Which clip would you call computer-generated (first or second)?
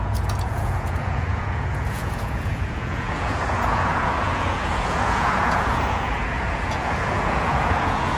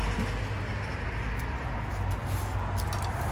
first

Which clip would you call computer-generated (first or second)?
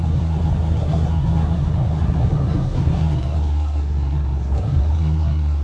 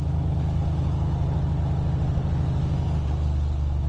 first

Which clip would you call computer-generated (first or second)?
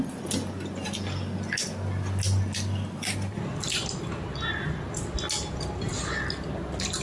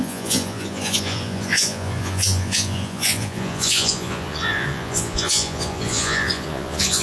second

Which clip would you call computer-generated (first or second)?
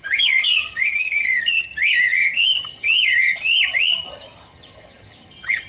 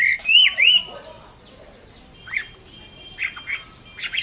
first